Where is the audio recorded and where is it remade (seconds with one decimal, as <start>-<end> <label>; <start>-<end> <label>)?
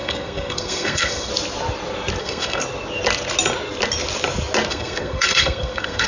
0.0-1.3 remade; 1.3-2.2 recorded; 2.2-2.6 remade; 2.6-4.7 recorded; 4.7-6.1 remade